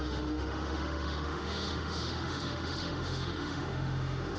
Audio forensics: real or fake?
fake